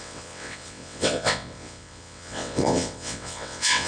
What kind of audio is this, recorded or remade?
remade